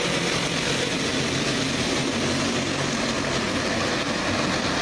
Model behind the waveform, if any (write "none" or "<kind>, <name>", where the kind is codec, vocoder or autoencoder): none